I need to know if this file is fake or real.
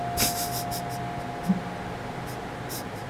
real